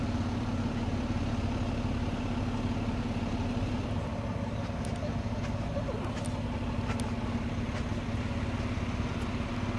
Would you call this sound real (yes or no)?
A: yes